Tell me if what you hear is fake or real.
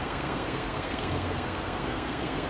fake